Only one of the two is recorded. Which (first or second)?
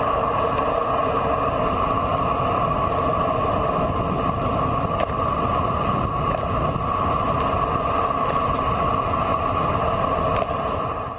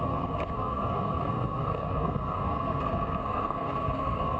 first